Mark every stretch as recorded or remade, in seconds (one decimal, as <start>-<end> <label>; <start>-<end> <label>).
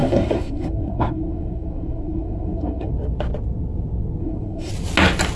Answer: 0.0-2.9 remade; 2.9-4.2 recorded; 4.2-4.7 remade; 4.7-5.4 recorded